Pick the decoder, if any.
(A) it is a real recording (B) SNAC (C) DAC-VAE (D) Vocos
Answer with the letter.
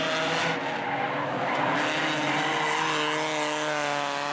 A